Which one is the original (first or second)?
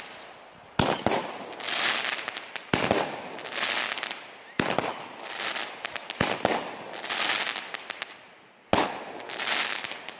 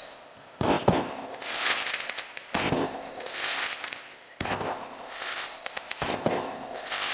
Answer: first